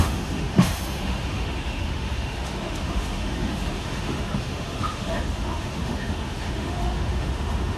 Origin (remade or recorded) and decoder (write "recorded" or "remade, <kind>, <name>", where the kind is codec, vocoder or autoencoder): remade, autoencoder, DAC-VAE